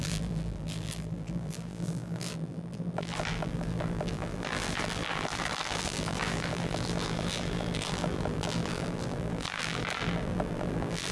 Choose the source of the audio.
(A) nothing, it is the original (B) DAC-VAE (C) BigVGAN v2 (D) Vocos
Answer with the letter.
C